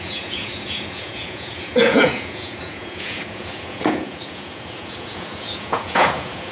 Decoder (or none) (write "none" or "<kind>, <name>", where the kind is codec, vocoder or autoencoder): vocoder, Vocos